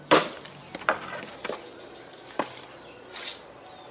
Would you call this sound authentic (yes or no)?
yes